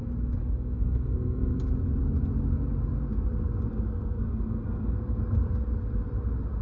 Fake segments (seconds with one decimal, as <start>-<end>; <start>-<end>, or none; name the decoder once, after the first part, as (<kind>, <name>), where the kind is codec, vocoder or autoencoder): 0.4-1.6 (codec, SNAC); 3.7-5.2